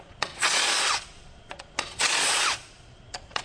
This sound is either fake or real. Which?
fake